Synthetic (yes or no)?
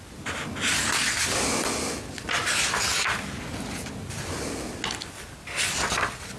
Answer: no